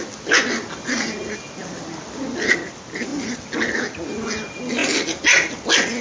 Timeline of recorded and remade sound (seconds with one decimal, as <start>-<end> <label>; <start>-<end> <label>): 0.0-6.0 recorded

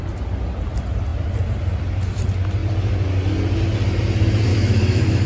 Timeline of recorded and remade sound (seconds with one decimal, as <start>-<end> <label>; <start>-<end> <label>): 0.0-4.5 recorded; 4.5-5.3 remade